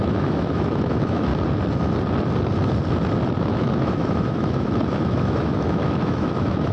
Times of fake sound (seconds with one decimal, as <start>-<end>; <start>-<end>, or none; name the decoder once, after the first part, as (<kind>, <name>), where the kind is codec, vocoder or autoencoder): 0.0-1.3 (autoencoder, DAC-VAE); 3.4-6.7

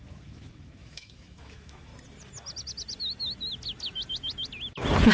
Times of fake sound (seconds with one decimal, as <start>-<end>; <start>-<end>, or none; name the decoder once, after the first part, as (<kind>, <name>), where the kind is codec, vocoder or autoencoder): 0.0-1.9 (autoencoder, DAC-VAE)

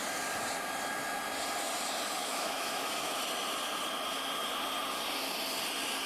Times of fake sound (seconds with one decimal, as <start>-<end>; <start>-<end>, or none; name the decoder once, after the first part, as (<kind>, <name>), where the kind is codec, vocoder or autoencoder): 2.2-3.2 (autoencoder, DAC-VAE)

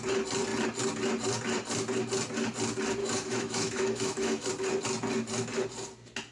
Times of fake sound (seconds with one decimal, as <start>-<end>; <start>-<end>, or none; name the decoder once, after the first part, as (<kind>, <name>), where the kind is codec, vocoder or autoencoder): 3.0-4.5 (autoencoder, DAC-VAE)

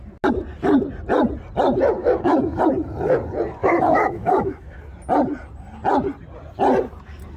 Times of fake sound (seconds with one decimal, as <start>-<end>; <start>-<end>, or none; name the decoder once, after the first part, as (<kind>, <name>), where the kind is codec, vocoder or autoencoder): 2.0-2.6 (autoencoder, DAC-VAE); 3.6-4.8

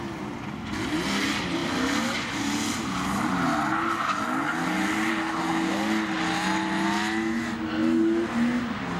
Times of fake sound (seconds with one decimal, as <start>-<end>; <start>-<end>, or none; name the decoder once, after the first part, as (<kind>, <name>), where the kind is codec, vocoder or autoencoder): none